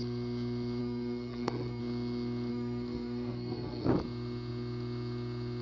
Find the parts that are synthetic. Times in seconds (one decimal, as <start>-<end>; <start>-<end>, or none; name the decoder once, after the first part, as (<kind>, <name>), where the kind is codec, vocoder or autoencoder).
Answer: 0.8-1.8 (codec, SNAC); 2.5-3.9

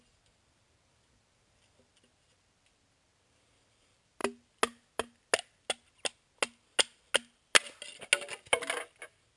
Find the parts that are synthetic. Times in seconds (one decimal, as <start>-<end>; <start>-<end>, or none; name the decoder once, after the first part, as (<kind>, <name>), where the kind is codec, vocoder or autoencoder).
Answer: none

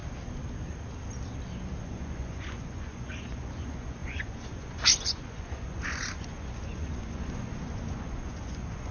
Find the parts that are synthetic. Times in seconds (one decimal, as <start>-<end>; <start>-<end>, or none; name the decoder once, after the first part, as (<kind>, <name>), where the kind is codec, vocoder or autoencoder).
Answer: 1.8-8.9 (vocoder, Vocos)

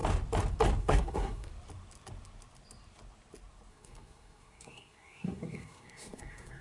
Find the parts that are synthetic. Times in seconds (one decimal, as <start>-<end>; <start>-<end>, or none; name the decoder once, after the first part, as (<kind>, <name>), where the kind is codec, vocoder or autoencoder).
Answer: 0.8-1.5 (codec, SNAC); 3.7-6.6

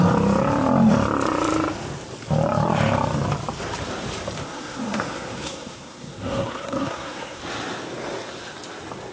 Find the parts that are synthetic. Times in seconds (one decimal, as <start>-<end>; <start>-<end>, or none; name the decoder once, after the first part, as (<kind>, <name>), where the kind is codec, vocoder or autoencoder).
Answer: 4.4-7.4 (codec, SNAC)

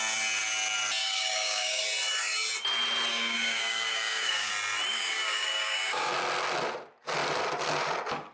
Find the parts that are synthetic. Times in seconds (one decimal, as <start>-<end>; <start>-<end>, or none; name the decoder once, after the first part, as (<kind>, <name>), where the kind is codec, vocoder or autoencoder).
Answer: 1.0-1.8 (codec, DAC); 3.1-4.5; 4.9-6.1

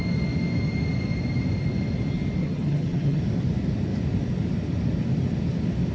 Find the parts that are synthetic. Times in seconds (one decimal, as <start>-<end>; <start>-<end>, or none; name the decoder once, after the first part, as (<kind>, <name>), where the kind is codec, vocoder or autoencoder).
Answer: 2.4-3.2 (vocoder, HiFi-GAN)